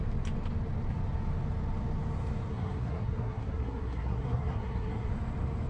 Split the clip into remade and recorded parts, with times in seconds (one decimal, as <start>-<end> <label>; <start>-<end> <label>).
0.0-2.5 recorded; 2.5-5.1 remade; 5.1-5.7 recorded